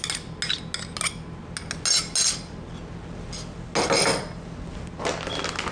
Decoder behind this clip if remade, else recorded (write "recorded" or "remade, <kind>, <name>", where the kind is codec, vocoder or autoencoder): recorded